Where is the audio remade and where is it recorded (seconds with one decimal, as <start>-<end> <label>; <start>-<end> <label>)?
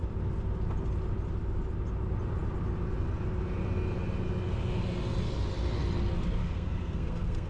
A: 0.0-6.4 recorded; 6.4-7.5 remade